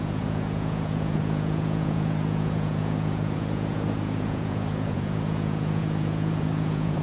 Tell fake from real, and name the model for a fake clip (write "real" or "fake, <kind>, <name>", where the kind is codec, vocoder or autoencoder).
fake, vocoder, Vocos